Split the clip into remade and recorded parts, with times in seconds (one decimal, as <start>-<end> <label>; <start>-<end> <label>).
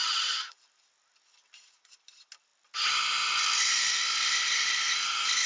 0.0-0.6 remade; 0.6-5.5 recorded